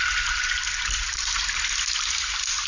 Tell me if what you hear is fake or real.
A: real